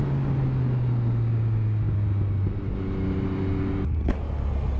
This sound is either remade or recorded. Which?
recorded